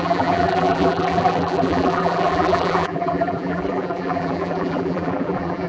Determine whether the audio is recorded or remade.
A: remade